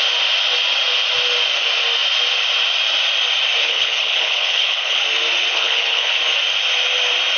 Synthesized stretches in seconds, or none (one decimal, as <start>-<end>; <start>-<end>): 3.6-5.0; 5.5-6.1